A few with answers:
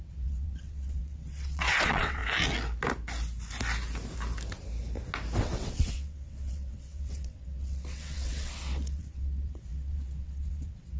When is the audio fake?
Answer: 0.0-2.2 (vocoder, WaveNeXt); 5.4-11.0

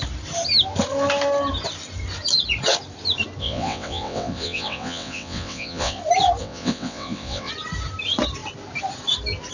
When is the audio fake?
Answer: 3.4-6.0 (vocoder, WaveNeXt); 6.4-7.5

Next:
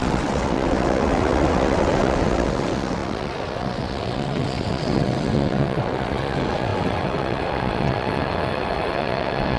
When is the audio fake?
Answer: 0.0-9.6 (vocoder, WaveNeXt)